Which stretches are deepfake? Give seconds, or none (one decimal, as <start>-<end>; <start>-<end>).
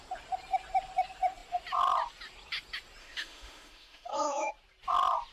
3.0-4.5